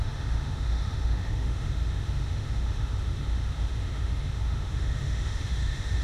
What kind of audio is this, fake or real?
fake